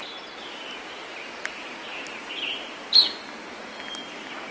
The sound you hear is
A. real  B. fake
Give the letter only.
A